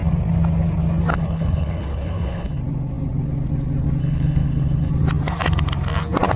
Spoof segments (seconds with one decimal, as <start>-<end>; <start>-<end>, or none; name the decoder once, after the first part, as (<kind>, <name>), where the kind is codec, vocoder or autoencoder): 1.1-2.6 (codec, HILCodec); 4.0-4.9